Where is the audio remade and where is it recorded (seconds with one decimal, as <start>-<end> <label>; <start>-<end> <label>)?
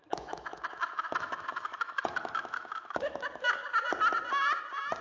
0.0-3.7 remade; 3.7-5.0 recorded